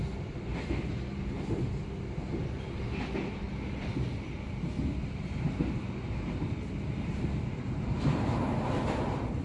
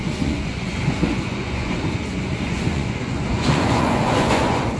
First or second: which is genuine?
first